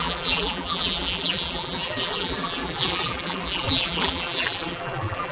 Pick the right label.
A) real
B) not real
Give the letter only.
B